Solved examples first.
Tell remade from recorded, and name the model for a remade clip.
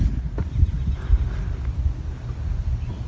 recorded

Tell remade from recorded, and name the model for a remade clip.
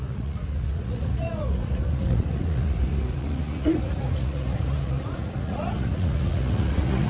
remade, vocoder, Vocos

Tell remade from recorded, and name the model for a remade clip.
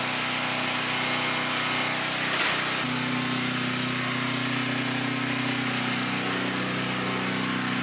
recorded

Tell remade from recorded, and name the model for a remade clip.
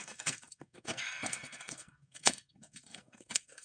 remade, codec, SNAC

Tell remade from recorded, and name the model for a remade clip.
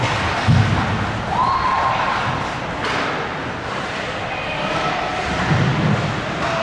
recorded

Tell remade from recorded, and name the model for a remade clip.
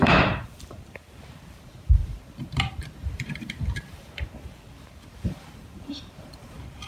remade, vocoder, BigVGAN v2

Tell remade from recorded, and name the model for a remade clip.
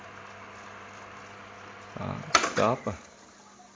recorded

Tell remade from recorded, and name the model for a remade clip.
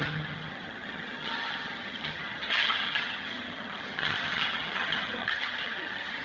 remade, vocoder, HiFi-GAN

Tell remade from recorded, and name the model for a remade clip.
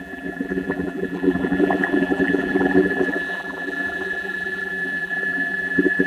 remade, vocoder, BigVGAN v2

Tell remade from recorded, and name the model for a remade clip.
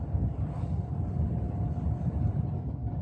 recorded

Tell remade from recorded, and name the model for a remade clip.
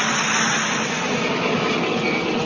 recorded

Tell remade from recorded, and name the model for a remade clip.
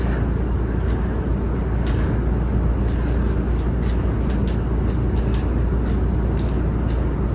recorded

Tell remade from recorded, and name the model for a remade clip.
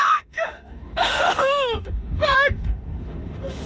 remade, autoencoder, DAC-VAE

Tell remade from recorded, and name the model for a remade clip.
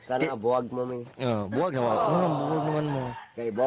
recorded